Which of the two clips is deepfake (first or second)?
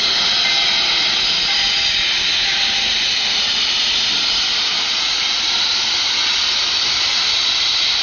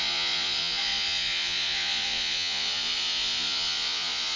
second